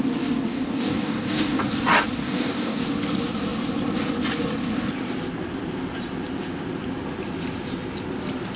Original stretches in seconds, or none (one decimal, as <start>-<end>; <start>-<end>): 0.0-0.5; 1.6-2.2; 2.8-8.6